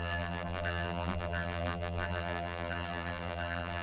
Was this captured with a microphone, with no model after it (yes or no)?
no